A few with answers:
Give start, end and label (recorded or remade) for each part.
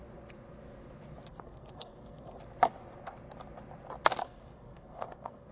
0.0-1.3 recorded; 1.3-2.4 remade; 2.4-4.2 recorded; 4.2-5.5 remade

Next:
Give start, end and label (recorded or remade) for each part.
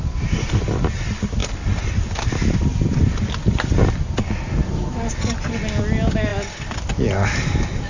0.0-7.9 recorded